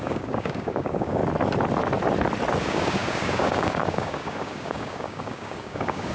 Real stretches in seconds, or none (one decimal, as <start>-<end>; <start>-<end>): 1.2-2.6